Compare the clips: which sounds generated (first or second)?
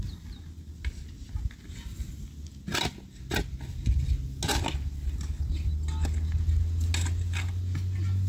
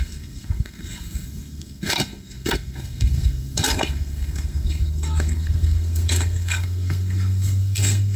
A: second